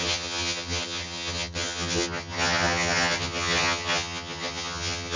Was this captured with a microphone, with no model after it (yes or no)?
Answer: no